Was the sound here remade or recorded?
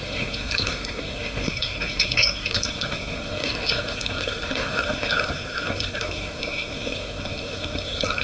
remade